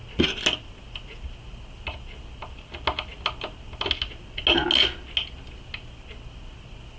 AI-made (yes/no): no